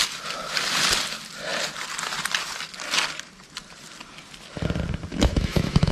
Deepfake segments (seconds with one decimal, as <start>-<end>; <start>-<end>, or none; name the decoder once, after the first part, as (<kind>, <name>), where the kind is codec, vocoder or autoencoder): 5.1-5.9 (autoencoder, DAC-VAE)